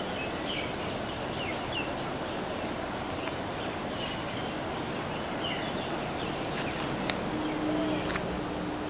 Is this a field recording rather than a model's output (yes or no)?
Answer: yes